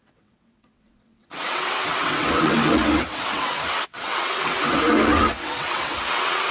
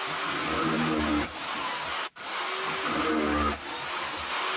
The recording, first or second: second